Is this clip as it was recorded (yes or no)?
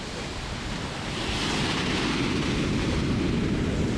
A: yes